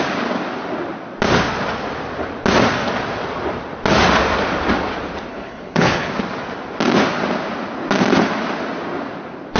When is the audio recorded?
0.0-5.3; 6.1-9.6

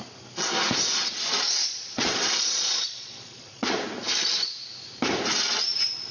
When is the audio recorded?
0.0-1.6; 3.8-6.1

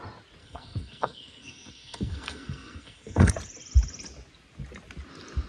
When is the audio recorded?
0.0-0.4; 3.3-5.5

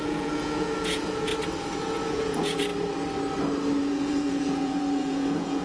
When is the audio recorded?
1.3-1.8; 2.7-3.8

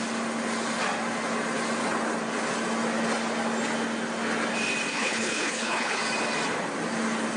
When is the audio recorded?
0.0-4.9; 6.0-7.4

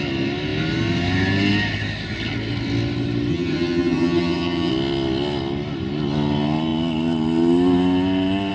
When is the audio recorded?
0.0-3.3; 4.7-8.5

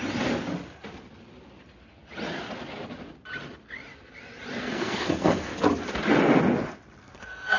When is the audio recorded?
0.0-4.6; 5.5-7.0